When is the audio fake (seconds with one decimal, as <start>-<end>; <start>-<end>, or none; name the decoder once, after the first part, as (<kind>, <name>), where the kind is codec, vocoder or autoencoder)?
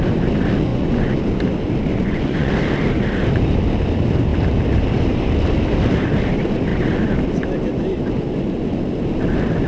0.7-1.2 (vocoder, Vocos); 1.9-2.5